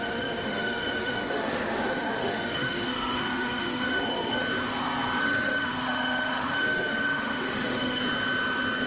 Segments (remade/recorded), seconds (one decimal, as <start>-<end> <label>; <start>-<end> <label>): 0.0-4.4 remade; 4.4-5.2 recorded; 5.2-8.0 remade; 8.0-8.9 recorded